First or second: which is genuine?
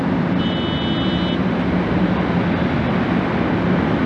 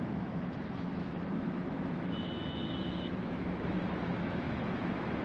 first